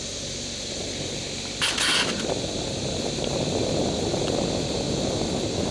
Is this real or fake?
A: real